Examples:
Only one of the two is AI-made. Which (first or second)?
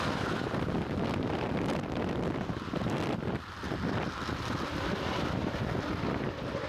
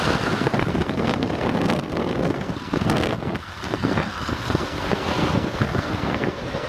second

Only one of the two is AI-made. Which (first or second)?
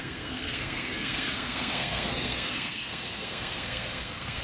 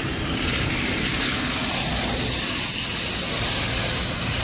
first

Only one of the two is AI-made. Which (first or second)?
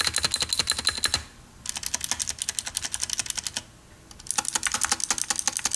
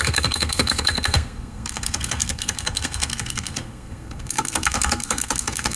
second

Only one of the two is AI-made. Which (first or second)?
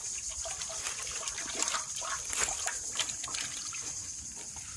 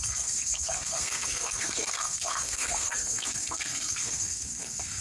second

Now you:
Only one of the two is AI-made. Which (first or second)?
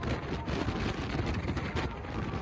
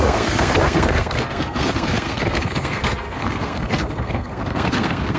second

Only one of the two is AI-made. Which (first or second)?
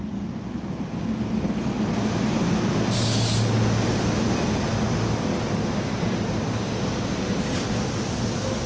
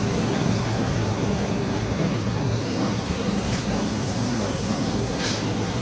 second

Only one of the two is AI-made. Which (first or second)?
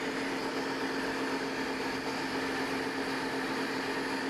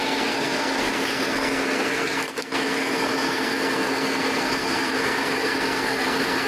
second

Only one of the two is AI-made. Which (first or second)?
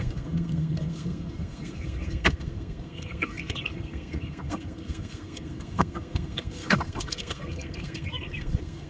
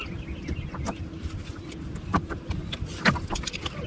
first